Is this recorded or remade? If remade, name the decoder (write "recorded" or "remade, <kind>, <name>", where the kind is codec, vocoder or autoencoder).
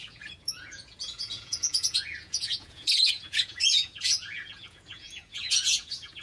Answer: remade, vocoder, Vocos